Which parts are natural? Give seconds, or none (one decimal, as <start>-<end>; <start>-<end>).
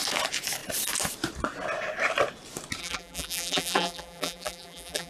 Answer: 0.0-2.8